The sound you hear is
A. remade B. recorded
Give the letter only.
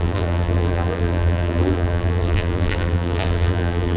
A